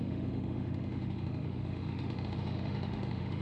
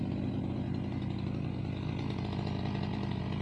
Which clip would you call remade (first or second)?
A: first